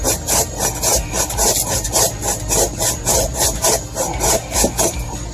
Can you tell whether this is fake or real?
real